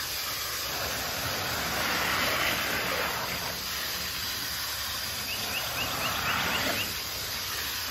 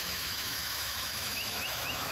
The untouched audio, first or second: first